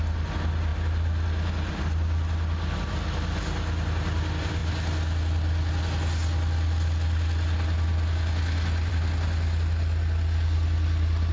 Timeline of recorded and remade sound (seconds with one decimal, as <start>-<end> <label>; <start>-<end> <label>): 0.0-11.3 recorded